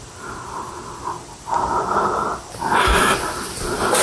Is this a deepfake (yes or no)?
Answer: no